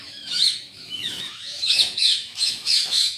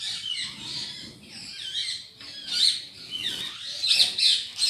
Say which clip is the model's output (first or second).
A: first